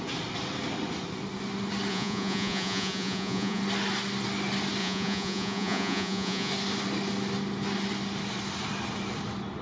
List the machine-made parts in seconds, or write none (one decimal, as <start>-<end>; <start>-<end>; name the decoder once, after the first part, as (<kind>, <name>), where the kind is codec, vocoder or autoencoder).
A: 1.9-3.6 (vocoder, Vocos); 4.8-6.5